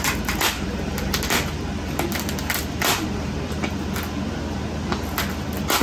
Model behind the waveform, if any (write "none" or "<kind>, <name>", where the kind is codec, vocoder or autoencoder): none